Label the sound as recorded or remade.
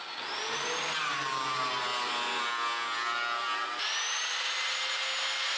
recorded